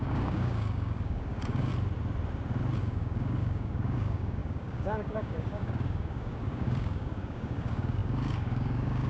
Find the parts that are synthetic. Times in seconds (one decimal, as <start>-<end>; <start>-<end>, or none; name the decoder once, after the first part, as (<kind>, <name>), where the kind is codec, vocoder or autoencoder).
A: 0.0-1.7 (codec, DAC); 2.8-9.1